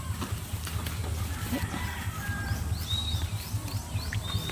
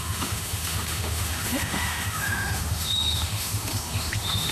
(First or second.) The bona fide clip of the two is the first